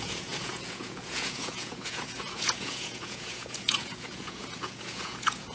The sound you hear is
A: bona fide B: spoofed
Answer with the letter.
B